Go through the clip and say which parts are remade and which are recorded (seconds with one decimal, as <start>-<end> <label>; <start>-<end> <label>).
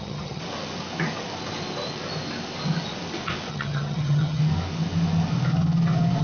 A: 0.0-0.4 remade; 0.4-3.5 recorded; 3.5-4.4 remade; 4.4-6.2 recorded